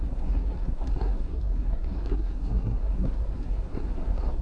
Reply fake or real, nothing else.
fake